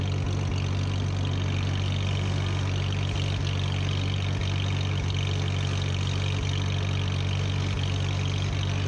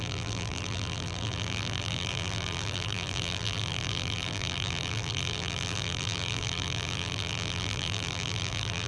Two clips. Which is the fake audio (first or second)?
second